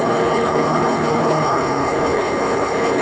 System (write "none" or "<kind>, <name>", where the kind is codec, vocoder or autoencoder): codec, HILCodec